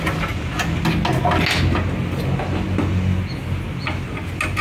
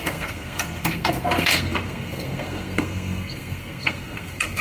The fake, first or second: second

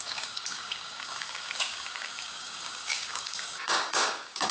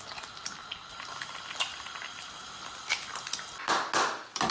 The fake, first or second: first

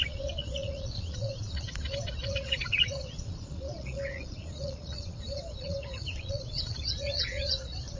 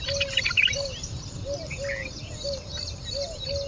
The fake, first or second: first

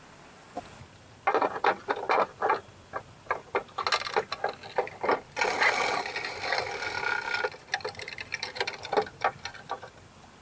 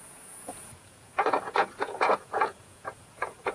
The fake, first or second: second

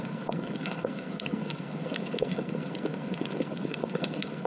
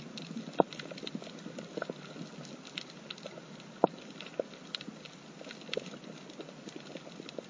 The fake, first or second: first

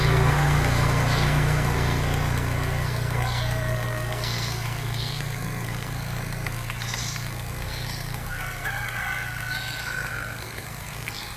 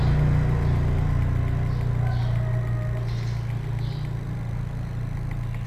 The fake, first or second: first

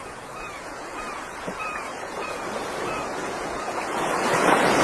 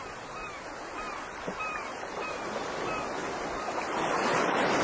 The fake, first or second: first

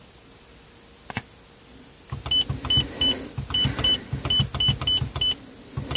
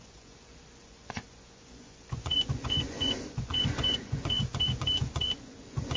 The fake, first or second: second